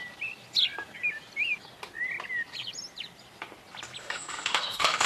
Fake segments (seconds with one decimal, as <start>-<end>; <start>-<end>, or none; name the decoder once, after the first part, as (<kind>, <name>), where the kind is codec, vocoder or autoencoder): 4.0-5.1 (autoencoder, DAC-VAE)